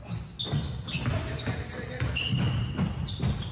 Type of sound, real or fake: real